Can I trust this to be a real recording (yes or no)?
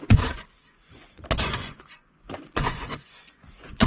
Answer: no